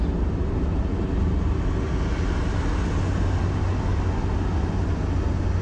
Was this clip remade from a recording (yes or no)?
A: no